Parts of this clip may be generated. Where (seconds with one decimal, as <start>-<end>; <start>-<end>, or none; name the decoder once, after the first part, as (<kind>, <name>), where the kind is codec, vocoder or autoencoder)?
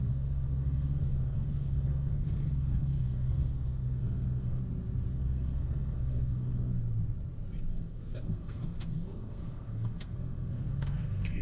0.0-4.6 (codec, SNAC); 5.1-6.8; 7.7-11.4